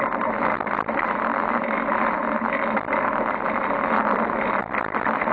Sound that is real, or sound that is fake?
real